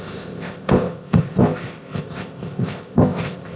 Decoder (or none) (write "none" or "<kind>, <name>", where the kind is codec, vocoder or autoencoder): codec, ZipCodec